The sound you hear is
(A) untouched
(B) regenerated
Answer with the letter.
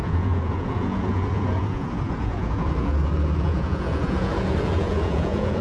B